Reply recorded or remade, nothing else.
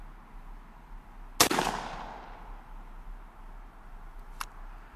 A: recorded